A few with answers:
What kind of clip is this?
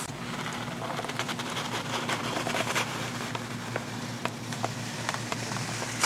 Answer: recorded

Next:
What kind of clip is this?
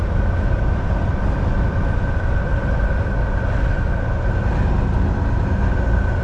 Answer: recorded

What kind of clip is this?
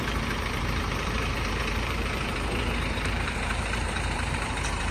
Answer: remade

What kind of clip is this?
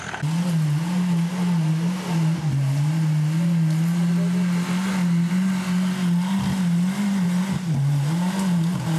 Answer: recorded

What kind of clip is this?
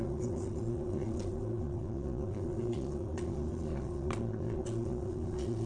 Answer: remade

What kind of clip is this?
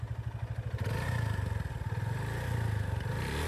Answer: recorded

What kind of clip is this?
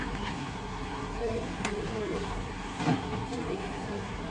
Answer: remade